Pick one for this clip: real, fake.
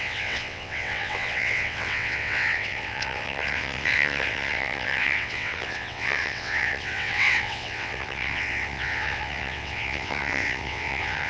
fake